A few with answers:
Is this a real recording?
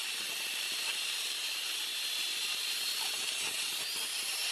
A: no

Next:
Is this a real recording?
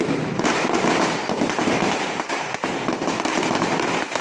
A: no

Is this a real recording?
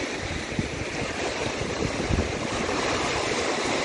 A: no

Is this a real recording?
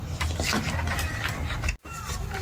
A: yes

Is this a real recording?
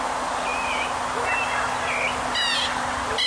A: yes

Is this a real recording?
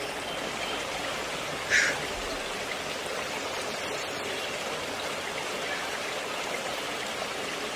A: yes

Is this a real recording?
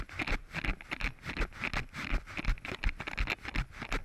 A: yes